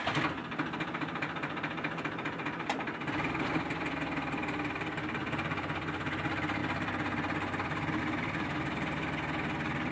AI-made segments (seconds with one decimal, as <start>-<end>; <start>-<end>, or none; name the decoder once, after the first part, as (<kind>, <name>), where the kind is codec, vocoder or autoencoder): none